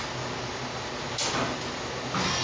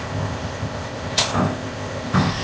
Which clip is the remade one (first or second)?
second